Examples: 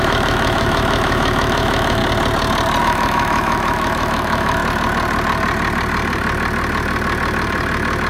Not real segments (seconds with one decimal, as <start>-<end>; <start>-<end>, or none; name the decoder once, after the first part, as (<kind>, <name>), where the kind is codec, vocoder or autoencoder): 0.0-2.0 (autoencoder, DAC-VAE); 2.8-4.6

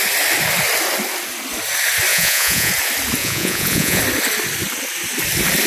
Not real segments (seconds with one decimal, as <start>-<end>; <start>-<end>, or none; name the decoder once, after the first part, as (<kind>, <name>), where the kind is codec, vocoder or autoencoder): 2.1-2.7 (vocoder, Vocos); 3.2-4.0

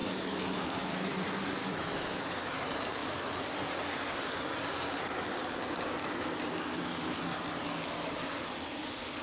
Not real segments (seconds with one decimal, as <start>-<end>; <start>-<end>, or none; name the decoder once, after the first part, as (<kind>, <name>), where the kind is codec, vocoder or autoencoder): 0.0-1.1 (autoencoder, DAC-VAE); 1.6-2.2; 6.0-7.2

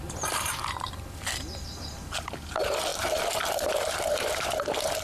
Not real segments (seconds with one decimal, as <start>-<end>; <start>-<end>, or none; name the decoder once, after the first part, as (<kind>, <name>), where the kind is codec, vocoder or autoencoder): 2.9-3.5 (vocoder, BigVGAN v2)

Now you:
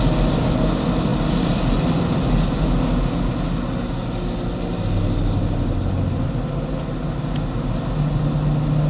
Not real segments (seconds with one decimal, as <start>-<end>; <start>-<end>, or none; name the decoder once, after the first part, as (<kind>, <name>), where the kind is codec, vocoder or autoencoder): none

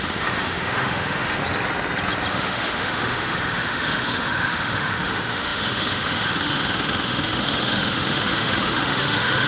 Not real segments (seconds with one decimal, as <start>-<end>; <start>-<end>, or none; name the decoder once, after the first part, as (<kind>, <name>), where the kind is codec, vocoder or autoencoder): 0.0-1.4 (autoencoder, DAC-VAE); 2.3-9.5

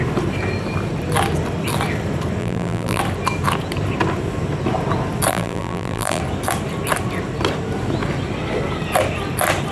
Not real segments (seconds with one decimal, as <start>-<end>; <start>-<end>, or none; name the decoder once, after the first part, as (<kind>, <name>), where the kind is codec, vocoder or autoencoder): 2.4-3.0 (vocoder, BigVGAN v2); 5.3-6.2

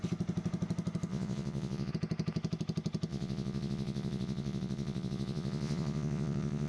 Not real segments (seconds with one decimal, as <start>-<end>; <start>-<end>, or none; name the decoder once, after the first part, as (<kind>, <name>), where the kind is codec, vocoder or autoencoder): 1.1-1.9 (vocoder, Vocos); 3.1-6.7